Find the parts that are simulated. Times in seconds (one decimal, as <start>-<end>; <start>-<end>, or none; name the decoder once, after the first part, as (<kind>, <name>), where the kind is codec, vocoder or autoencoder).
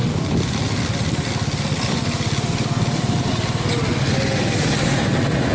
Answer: 0.0-3.3 (vocoder, BigVGAN v2)